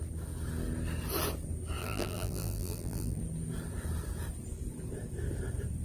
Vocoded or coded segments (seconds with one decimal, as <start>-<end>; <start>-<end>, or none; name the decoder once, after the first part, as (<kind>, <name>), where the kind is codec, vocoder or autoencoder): 1.8-3.2 (vocoder, BigVGAN v2)